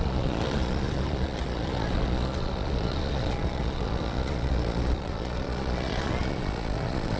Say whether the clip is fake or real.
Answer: fake